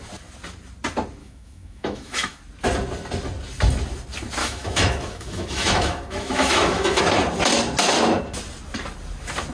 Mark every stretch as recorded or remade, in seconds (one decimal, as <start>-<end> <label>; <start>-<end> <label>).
0.0-1.2 recorded; 1.2-2.4 remade; 2.4-4.4 recorded; 4.4-7.0 remade; 7.0-9.5 recorded